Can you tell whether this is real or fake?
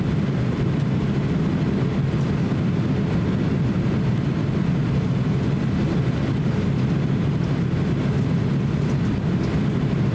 real